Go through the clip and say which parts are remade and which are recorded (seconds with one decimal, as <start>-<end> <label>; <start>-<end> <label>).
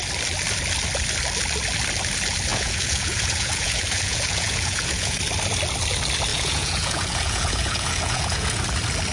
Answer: 0.0-2.5 recorded; 2.5-5.2 remade; 5.2-6.3 recorded; 6.3-8.6 remade; 8.6-9.1 recorded